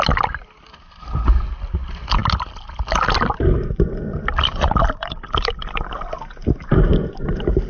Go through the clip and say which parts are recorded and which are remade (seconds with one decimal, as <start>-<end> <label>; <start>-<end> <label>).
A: 0.0-7.7 recorded